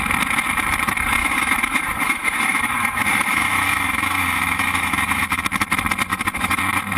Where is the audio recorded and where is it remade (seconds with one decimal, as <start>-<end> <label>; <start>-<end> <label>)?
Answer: 0.0-1.2 recorded; 1.2-5.4 remade; 5.4-6.1 recorded; 6.1-6.6 remade; 6.6-7.0 recorded